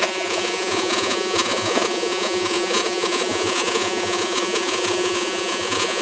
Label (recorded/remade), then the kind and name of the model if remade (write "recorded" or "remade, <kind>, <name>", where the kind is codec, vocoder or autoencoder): remade, vocoder, Vocos